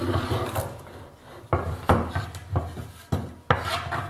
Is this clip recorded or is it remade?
recorded